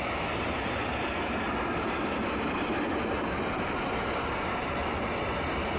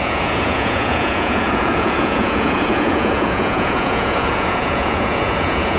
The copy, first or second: second